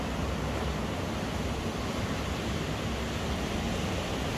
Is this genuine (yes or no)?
yes